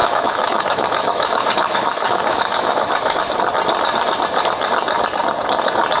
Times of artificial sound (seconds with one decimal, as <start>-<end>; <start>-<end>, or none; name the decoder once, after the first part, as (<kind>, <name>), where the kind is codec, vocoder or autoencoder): 0.0-3.3 (autoencoder, DAC-VAE)